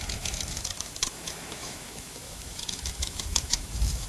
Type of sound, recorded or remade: remade